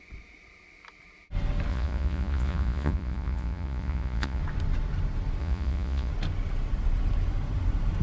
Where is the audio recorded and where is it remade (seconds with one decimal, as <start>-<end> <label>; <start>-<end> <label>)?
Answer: 0.0-1.7 recorded; 1.7-4.4 remade; 4.4-5.4 recorded; 5.4-6.1 remade; 6.1-8.0 recorded